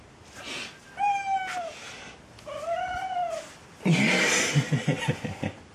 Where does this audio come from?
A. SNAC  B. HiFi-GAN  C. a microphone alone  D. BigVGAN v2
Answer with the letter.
C